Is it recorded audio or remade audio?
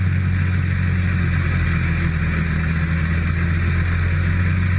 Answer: recorded